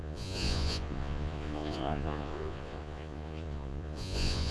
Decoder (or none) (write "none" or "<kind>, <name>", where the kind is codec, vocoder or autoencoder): vocoder, Vocos